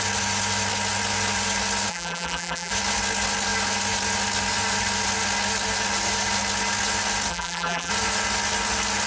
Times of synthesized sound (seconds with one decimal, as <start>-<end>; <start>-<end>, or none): 1.9-2.7; 7.3-7.9